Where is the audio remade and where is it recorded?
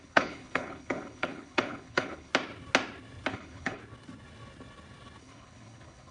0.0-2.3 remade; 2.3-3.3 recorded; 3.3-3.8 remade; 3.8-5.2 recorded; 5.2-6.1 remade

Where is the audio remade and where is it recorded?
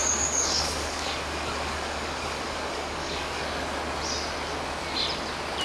0.0-3.4 remade; 3.4-5.6 recorded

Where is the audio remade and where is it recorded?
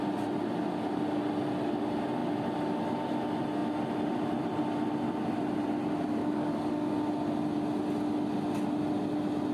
0.0-6.2 recorded; 6.2-6.9 remade; 6.9-9.5 recorded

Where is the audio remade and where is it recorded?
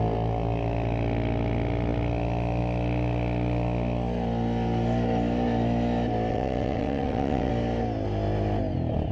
0.0-6.3 recorded; 6.3-7.5 remade; 7.5-9.1 recorded